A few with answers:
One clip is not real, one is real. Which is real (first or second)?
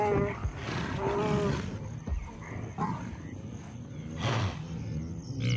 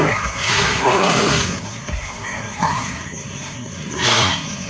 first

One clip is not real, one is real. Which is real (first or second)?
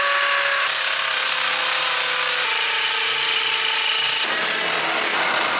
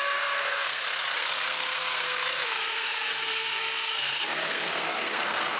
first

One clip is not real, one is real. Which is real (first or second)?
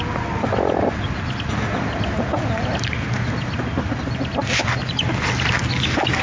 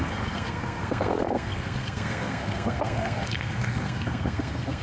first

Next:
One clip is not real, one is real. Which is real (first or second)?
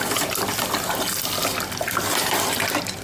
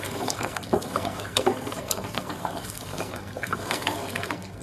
first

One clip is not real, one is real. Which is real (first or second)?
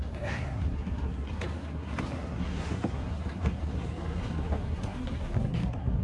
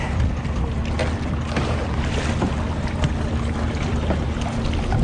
second